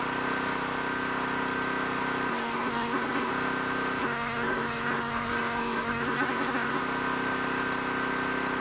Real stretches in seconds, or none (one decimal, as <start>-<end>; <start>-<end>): 0.0-2.3; 3.3-4.0; 6.8-8.6